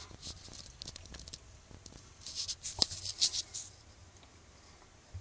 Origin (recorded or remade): recorded